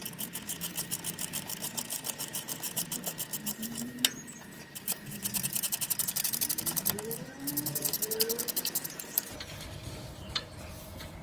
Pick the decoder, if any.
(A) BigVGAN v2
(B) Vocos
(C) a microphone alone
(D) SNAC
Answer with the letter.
A